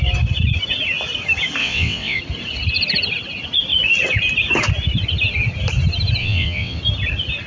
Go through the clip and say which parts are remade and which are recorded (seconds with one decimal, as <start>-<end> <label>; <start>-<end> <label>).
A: 0.0-1.6 recorded; 1.6-2.2 remade; 2.2-6.2 recorded; 6.2-6.8 remade; 6.8-7.5 recorded